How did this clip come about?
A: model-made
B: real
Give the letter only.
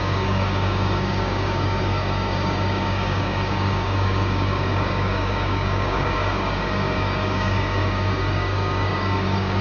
A